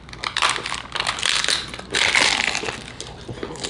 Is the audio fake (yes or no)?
no